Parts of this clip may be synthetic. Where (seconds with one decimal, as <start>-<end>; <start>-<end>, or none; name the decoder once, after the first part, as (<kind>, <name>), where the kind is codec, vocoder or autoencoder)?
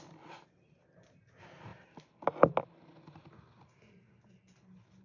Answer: none